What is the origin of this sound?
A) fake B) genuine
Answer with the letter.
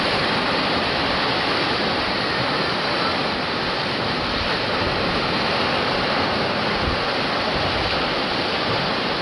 B